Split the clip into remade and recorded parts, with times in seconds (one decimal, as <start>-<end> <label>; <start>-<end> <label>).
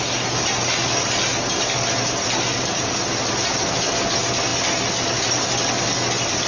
0.0-6.5 recorded